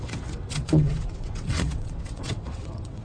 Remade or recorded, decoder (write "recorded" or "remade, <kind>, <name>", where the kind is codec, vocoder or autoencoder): remade, vocoder, WaveNeXt